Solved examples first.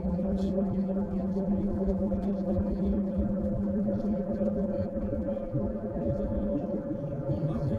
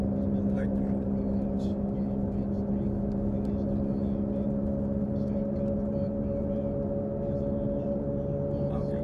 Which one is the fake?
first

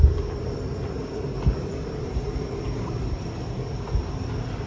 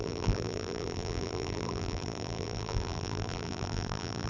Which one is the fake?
second